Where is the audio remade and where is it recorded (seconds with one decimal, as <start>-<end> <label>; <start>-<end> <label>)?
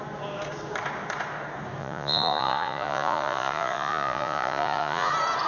0.0-1.8 recorded; 1.8-5.1 remade; 5.1-5.5 recorded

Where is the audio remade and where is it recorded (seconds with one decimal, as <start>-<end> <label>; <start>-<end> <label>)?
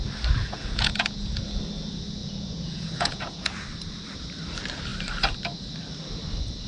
0.0-0.4 recorded; 0.4-1.4 remade; 1.4-2.2 recorded; 2.2-3.5 remade; 3.5-6.7 recorded